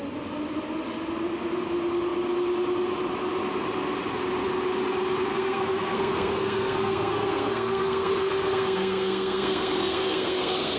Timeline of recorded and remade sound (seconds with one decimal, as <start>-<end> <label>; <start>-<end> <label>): 0.0-5.3 recorded; 5.3-10.8 remade